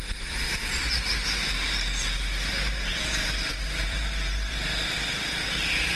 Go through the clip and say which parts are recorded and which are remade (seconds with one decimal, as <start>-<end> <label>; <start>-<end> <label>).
0.0-1.1 remade; 1.1-2.2 recorded; 2.2-6.0 remade